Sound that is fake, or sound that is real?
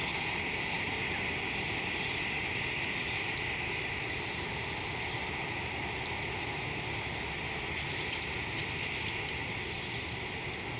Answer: real